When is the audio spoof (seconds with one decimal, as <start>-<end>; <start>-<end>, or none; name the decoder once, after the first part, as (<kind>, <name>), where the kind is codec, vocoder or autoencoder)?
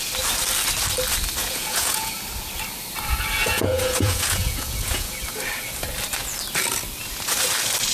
1.4-2.1 (vocoder, Vocos); 3.4-5.1